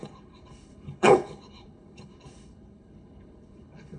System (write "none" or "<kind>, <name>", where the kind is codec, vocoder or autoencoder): codec, HILCodec